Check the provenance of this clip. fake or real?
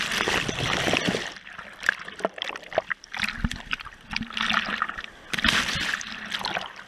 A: fake